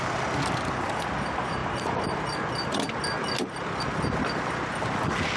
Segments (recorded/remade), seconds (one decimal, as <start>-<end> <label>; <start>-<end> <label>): 0.0-5.4 recorded